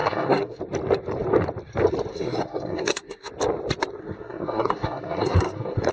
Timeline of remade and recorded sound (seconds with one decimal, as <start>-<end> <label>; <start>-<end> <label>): 0.0-0.6 remade; 0.6-2.1 recorded; 2.1-3.3 remade; 3.3-4.0 recorded; 4.0-5.9 remade